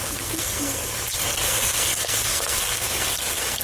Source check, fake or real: fake